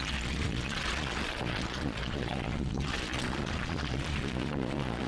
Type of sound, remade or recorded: remade